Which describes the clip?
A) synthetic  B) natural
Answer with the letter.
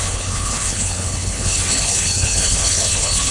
A